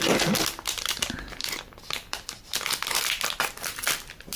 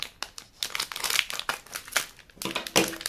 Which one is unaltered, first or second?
second